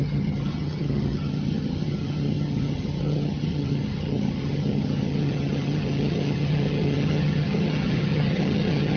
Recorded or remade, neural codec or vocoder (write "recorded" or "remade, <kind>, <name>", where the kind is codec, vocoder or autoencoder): remade, vocoder, HiFi-GAN